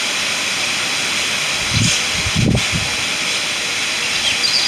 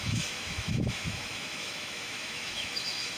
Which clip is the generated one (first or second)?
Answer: second